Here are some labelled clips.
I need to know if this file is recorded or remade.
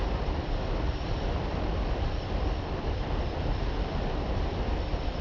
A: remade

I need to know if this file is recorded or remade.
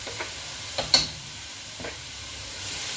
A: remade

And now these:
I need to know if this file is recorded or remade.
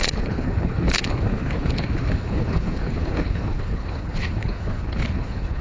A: remade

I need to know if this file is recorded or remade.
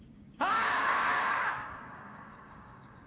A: remade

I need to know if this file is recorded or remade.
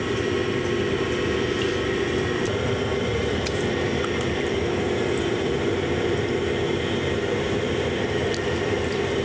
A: remade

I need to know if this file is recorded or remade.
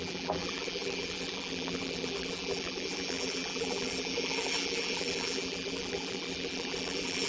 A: remade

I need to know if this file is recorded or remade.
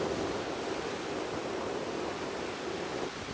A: recorded